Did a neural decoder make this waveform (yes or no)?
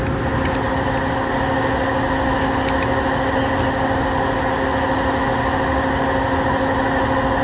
no